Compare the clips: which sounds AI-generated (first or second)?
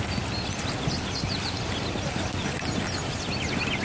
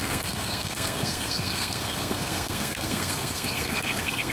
second